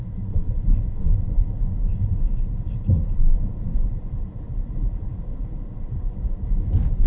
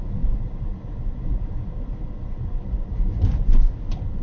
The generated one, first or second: first